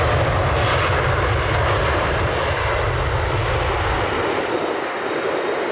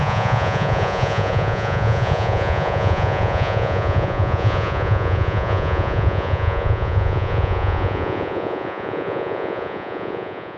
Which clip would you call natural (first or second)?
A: first